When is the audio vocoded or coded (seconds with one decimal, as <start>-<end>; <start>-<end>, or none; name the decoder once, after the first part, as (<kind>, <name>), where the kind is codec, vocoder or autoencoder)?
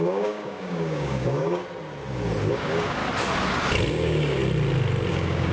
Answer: 0.0-1.6 (codec, DAC); 2.5-3.0; 3.9-4.4; 5.1-5.5